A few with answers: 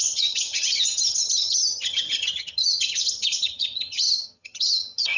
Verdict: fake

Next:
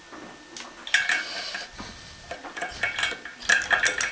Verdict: real